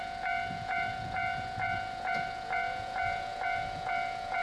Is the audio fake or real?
fake